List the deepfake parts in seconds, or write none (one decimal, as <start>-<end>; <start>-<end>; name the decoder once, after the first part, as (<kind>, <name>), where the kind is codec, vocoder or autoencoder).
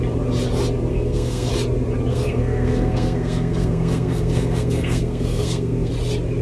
0.9-1.5 (codec, SNAC); 2.1-5.9